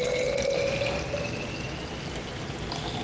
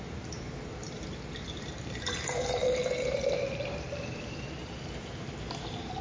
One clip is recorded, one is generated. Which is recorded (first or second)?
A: first